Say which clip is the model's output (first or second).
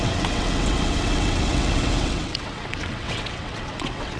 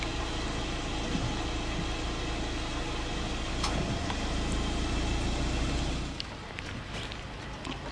first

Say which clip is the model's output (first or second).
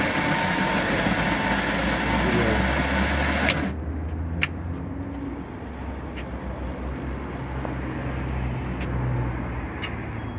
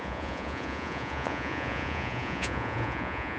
second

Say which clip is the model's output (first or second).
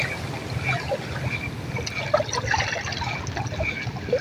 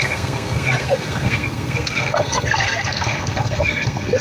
second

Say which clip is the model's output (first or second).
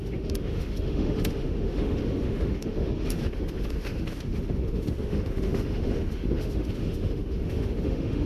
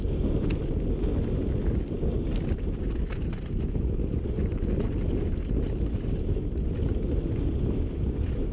first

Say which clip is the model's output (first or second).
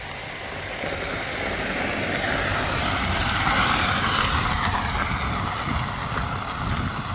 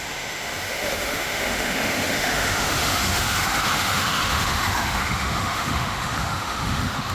second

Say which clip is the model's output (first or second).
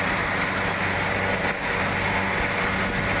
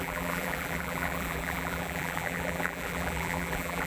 second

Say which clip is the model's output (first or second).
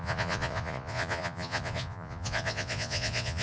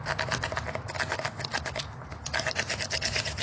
first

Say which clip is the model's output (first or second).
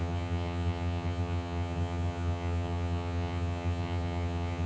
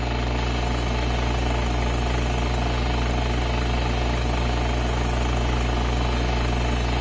first